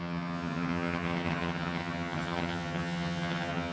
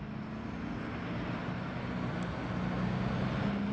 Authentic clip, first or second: second